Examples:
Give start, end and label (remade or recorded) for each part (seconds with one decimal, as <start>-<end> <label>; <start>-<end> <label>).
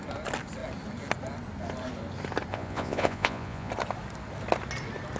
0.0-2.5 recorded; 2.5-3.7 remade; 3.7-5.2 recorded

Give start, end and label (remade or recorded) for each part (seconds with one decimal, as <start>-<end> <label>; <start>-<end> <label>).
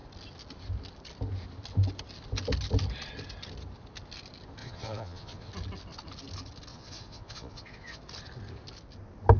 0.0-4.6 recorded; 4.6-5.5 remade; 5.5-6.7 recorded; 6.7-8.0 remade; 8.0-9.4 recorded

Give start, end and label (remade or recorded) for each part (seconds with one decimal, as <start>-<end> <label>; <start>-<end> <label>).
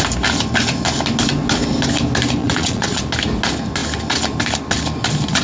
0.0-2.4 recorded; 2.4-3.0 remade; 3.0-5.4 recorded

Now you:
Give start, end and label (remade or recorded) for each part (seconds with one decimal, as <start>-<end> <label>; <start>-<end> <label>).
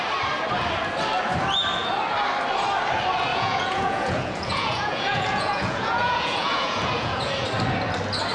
0.0-3.3 recorded; 3.3-7.3 remade; 7.3-8.3 recorded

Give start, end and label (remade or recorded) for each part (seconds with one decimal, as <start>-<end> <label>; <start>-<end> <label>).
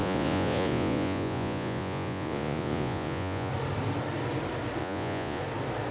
0.0-3.5 remade; 3.5-4.8 recorded; 4.8-5.4 remade; 5.4-5.9 recorded